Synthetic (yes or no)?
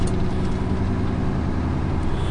no